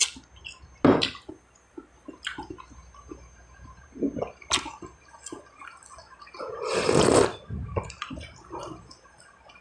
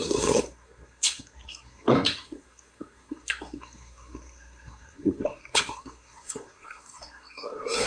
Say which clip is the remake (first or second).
second